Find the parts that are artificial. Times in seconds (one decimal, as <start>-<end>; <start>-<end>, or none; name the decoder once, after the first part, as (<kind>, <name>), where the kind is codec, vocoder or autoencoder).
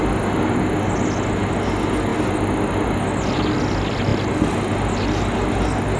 none